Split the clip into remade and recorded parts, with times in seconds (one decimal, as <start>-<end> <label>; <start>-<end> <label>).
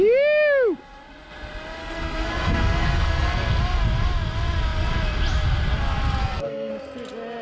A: 0.0-1.8 recorded; 1.8-3.6 remade; 3.6-6.2 recorded; 6.2-6.7 remade; 6.7-7.4 recorded